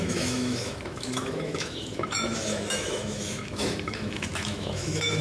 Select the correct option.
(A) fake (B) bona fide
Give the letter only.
A